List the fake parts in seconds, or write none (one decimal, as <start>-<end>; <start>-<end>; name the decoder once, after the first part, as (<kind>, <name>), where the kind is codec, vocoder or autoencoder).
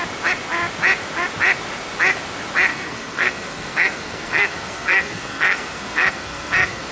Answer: 2.7-6.9 (codec, SNAC)